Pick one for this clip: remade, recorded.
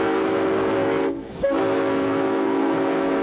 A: remade